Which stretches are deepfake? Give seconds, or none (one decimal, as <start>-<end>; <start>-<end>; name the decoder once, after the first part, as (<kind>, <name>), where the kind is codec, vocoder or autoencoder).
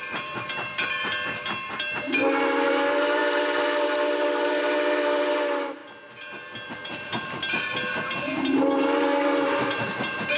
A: 0.0-5.8 (vocoder, BigVGAN v2); 6.7-10.4